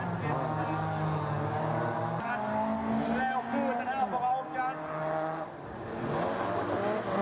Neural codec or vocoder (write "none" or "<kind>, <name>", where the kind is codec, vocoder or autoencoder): none